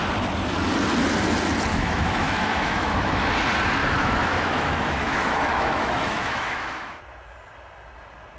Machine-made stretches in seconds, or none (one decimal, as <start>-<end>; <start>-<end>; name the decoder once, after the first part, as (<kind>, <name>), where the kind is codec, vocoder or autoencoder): 1.7-3.3 (autoencoder, DAC-VAE); 3.8-7.0